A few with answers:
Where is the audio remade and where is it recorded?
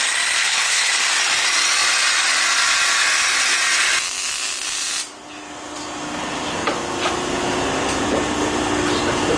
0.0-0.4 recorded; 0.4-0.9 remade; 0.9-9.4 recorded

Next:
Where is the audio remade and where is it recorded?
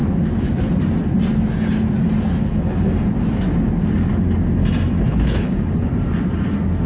0.0-2.4 recorded; 2.4-2.9 remade; 2.9-5.1 recorded; 5.1-5.9 remade; 5.9-6.9 recorded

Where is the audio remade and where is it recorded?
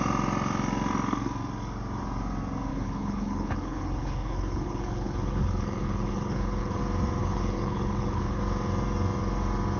0.0-2.7 recorded; 2.7-6.8 remade; 6.8-7.2 recorded; 7.2-8.4 remade; 8.4-9.8 recorded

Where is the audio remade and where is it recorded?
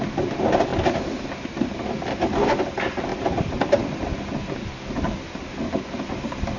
0.0-6.6 recorded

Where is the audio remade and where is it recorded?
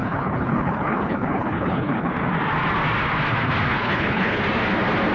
0.0-2.1 remade; 2.1-3.7 recorded; 3.7-4.4 remade; 4.4-5.1 recorded